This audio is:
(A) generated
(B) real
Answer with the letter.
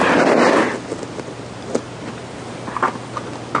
B